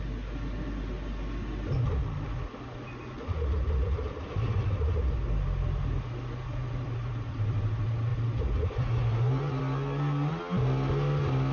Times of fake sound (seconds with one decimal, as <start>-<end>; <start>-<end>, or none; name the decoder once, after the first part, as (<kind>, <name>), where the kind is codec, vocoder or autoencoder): 2.5-4.3 (vocoder, BigVGAN v2)